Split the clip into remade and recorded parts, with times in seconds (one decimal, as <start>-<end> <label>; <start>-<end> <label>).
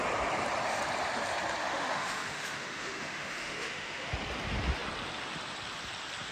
0.0-1.6 recorded; 1.6-4.1 remade; 4.1-6.3 recorded